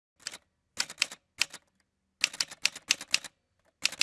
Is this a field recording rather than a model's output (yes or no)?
yes